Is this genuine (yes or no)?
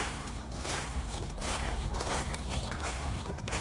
no